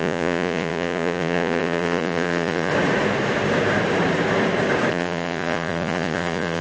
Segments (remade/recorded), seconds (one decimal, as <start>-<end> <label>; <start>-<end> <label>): 0.0-2.7 remade; 2.7-4.9 recorded; 4.9-6.6 remade